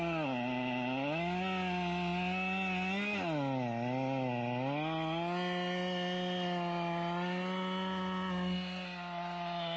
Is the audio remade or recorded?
recorded